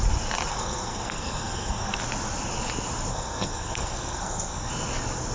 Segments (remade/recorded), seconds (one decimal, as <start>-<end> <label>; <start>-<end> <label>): 0.0-0.5 recorded; 0.5-2.0 remade; 2.0-3.1 recorded; 3.1-4.7 remade; 4.7-5.3 recorded